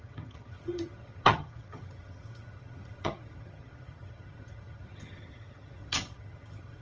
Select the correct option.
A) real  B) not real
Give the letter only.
B